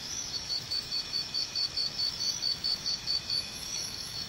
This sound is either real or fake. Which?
fake